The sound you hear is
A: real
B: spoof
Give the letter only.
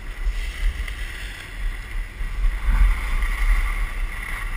A